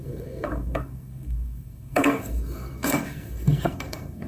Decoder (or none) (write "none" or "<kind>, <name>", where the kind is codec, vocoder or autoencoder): codec, SNAC